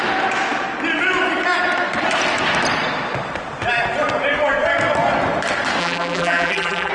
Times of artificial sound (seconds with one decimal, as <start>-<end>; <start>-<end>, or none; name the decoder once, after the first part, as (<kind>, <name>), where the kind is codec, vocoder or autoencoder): 5.8-6.9 (vocoder, BigVGAN v2)